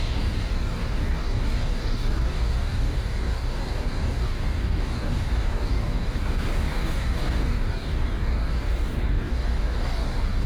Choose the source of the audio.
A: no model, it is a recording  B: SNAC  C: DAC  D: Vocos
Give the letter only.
C